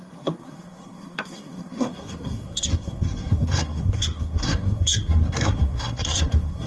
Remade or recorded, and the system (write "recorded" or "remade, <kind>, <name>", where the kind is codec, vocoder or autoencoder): remade, codec, SNAC